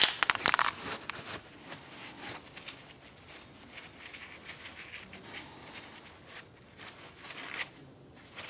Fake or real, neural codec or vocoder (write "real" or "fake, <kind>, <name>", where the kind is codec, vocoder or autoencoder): real